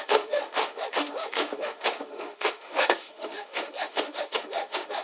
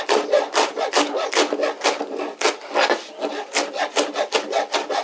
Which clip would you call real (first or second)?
second